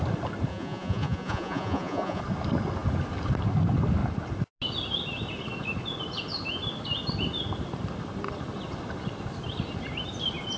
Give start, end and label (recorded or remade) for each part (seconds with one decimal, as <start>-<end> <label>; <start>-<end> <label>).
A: 0.0-0.5 recorded; 0.5-2.2 remade; 2.2-10.6 recorded